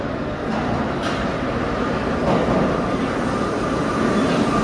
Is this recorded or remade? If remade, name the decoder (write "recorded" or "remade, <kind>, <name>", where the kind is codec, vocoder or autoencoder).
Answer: recorded